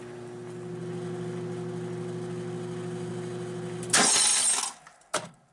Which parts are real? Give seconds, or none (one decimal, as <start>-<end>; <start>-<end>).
0.0-5.5